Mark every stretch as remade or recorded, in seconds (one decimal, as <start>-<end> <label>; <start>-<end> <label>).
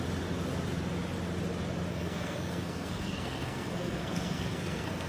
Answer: 0.0-1.9 recorded; 1.9-5.1 remade